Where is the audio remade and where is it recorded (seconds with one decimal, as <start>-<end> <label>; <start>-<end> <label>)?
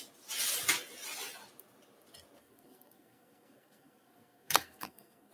0.0-2.4 recorded; 2.4-5.3 remade